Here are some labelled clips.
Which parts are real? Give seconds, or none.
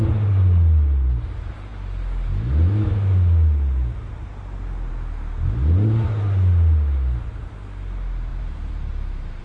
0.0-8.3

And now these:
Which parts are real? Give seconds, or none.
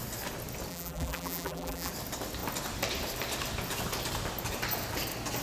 0.0-0.7; 1.9-5.4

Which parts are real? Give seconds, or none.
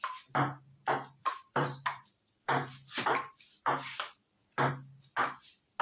0.0-1.2; 4.7-5.8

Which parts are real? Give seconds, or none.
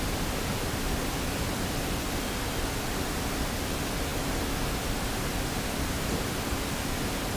0.0-7.4